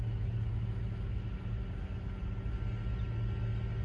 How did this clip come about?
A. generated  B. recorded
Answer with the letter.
B